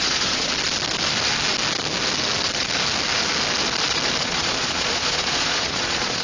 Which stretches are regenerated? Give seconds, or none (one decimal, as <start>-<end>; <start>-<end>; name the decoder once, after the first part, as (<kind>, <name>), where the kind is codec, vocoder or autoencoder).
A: 0.0-0.5 (vocoder, Vocos); 4.2-6.2